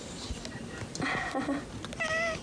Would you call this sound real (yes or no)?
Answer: yes